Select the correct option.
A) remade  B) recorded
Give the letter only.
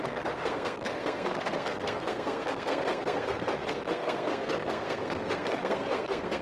A